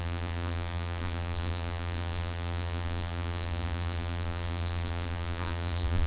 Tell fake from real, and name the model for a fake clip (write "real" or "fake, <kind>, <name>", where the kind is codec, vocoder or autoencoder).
fake, vocoder, BigVGAN v2